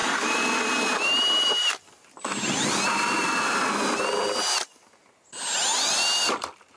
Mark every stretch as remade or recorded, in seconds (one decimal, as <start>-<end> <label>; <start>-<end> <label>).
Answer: 0.0-3.6 remade; 3.6-6.2 recorded; 6.2-6.8 remade